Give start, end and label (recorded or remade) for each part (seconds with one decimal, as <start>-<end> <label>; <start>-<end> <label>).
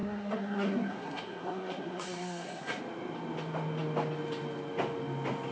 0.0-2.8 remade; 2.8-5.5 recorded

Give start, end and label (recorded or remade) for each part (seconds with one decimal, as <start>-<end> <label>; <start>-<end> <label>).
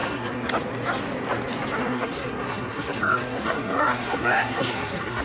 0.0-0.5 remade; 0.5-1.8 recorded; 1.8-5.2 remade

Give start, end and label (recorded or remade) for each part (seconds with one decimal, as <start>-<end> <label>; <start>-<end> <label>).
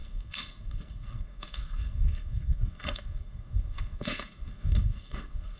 0.0-5.6 remade